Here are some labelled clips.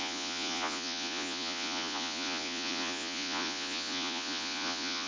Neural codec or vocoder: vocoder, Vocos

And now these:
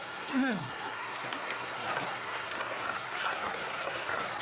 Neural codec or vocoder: codec, SNAC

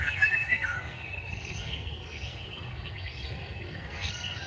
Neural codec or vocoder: codec, SNAC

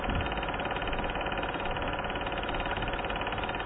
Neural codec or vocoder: none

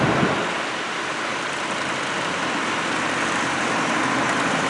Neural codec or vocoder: vocoder, BigVGAN v2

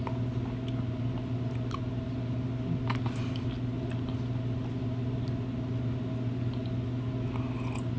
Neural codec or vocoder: none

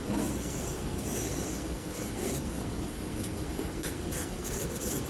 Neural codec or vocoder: codec, SNAC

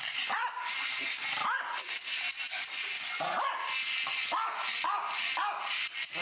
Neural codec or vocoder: none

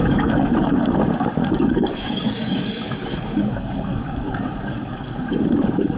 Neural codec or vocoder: codec, DAC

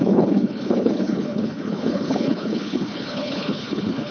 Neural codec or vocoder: codec, HILCodec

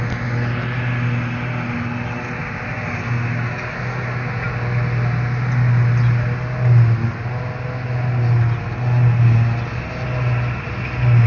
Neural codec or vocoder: none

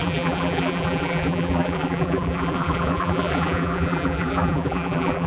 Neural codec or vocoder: vocoder, BigVGAN v2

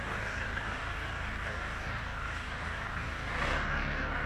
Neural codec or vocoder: codec, DAC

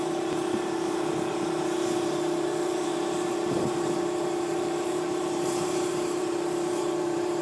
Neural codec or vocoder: vocoder, BigVGAN v2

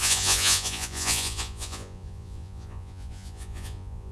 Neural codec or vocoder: vocoder, Vocos